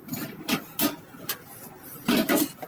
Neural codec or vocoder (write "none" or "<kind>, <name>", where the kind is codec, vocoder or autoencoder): none